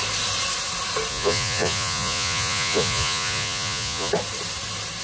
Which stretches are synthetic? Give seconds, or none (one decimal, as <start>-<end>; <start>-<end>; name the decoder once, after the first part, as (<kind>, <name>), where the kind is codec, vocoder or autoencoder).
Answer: 1.1-4.1 (vocoder, Vocos)